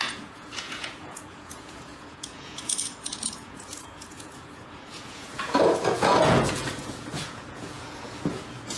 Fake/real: fake